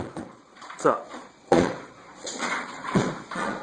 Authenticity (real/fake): fake